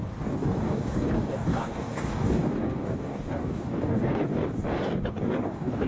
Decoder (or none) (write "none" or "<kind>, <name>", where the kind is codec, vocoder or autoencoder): codec, DAC